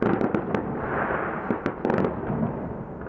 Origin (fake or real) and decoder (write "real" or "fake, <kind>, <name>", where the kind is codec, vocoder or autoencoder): real